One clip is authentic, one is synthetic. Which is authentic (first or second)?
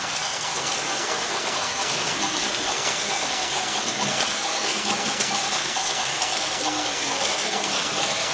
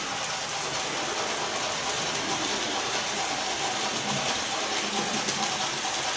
second